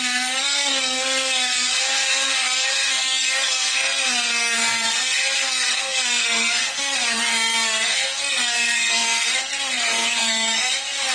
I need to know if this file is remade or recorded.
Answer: remade